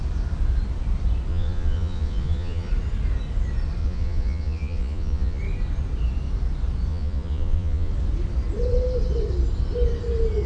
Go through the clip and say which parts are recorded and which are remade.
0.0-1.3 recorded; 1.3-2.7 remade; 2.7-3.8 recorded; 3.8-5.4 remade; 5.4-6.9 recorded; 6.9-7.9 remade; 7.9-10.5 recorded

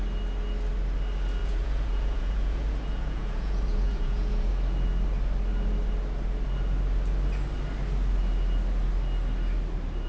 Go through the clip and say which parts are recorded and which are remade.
0.0-1.4 recorded; 1.4-4.5 remade; 4.5-10.1 recorded

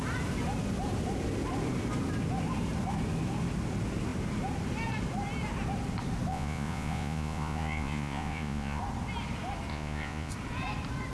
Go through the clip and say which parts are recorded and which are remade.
0.0-6.3 recorded; 6.3-8.8 remade; 8.8-9.7 recorded; 9.7-10.3 remade; 10.3-11.1 recorded

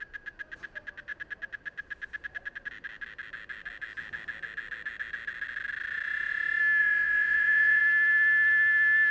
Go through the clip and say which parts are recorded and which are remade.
0.0-6.8 recorded; 6.8-7.8 remade; 7.8-9.1 recorded

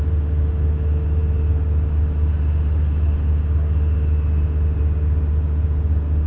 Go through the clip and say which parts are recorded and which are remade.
0.0-6.3 recorded

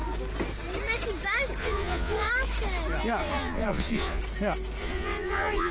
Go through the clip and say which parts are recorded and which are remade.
0.0-1.6 recorded; 1.6-2.3 remade; 2.3-3.2 recorded; 3.2-4.2 remade; 4.2-4.8 recorded; 4.8-5.7 remade

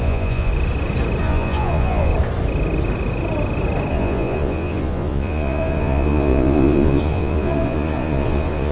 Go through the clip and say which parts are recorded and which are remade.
0.0-0.5 remade; 0.5-1.2 recorded; 1.2-2.1 remade; 2.1-3.9 recorded; 3.9-8.7 remade

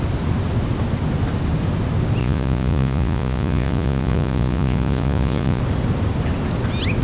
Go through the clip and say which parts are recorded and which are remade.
0.0-2.2 recorded; 2.2-5.6 remade; 5.6-7.0 recorded